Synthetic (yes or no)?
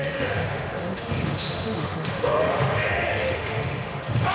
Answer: yes